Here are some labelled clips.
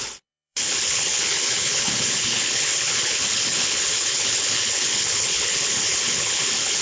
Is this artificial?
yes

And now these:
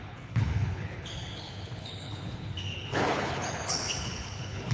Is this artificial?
yes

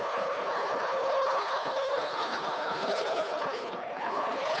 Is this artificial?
yes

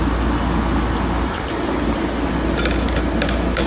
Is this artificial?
no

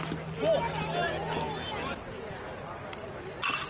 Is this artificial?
no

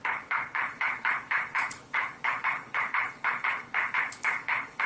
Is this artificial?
yes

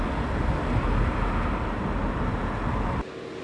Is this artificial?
no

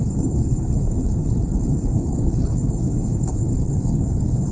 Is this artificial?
yes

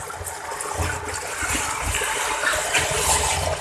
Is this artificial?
no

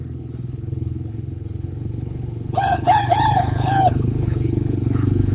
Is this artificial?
yes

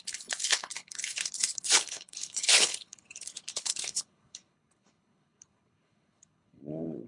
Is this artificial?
yes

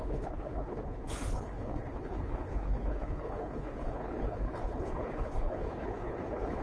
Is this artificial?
yes